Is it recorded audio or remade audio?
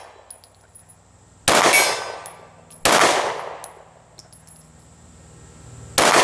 recorded